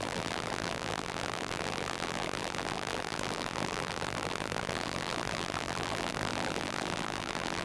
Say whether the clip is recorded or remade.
remade